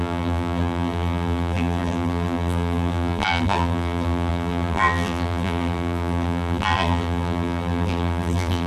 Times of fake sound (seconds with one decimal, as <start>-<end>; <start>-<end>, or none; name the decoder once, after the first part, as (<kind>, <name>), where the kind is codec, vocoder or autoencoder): 0.0-8.7 (vocoder, BigVGAN v2)